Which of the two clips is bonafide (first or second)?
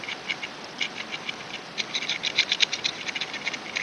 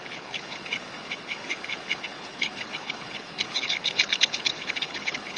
first